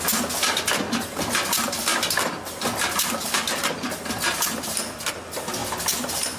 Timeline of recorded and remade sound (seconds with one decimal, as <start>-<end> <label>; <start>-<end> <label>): 0.0-1.9 recorded; 1.9-4.0 remade; 4.0-5.6 recorded; 5.6-6.4 remade